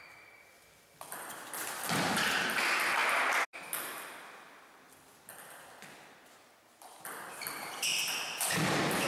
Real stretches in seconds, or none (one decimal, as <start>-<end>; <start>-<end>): 0.0-9.1